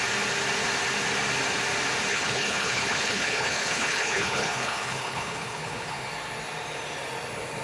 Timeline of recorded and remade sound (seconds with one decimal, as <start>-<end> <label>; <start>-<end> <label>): 0.0-2.1 recorded; 2.1-6.1 remade; 6.1-7.6 recorded